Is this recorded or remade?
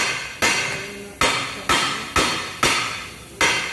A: recorded